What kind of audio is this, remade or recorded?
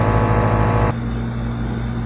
recorded